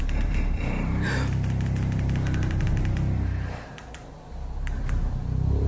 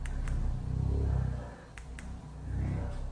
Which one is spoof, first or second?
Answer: first